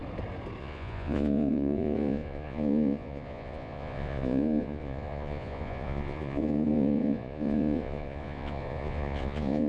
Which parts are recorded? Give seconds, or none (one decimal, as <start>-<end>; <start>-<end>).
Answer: 0.0-0.6